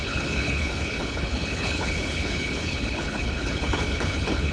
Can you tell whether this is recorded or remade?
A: remade